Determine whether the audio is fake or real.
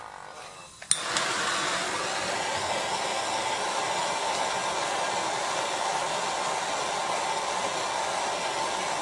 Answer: real